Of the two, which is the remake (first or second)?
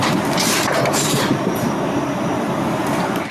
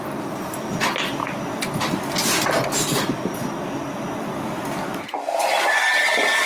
first